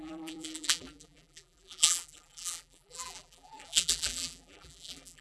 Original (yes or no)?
no